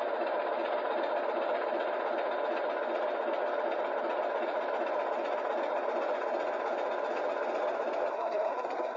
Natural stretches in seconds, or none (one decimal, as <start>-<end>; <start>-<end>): 0.0-8.1

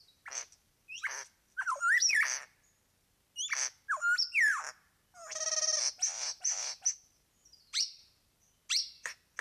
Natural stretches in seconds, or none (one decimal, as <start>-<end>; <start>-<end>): 0.0-9.4

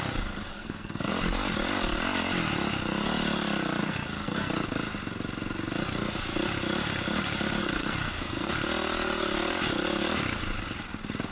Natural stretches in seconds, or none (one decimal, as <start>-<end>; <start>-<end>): 0.0-0.5; 1.1-3.8; 4.5-7.6; 8.5-11.3

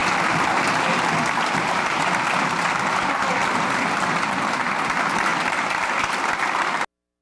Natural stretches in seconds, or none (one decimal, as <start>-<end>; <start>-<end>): 0.0-7.2

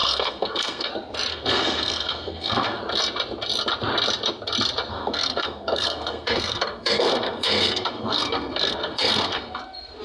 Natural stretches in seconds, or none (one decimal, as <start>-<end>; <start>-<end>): 0.9-1.3; 2.8-4.9; 9.6-10.0

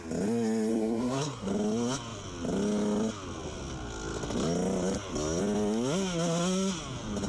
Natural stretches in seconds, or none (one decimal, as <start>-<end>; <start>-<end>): 0.0-0.7; 1.5-7.3

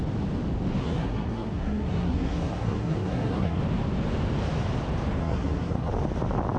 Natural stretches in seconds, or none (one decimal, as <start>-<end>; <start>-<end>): 0.0-0.8; 3.6-5.2; 5.9-6.6